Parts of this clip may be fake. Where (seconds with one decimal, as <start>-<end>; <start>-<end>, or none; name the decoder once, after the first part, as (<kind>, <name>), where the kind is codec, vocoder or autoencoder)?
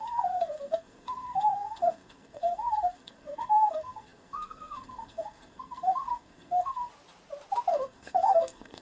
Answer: 0.0-6.9 (codec, SNAC); 7.7-8.8